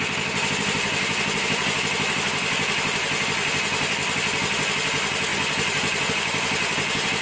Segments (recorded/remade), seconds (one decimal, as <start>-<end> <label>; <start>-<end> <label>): 0.0-7.2 recorded